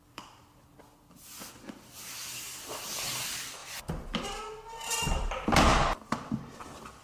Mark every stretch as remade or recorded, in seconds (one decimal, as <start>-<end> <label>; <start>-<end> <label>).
0.0-3.6 recorded; 3.6-4.2 remade; 4.2-5.7 recorded; 5.7-7.0 remade